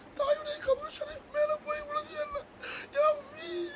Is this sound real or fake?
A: real